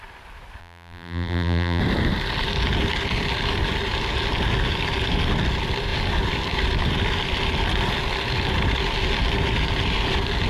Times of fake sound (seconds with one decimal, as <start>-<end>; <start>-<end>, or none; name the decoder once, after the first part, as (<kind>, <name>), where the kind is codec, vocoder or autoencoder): 0.6-1.8 (vocoder, BigVGAN v2)